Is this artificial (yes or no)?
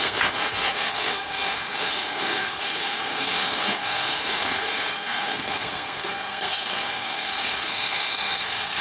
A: yes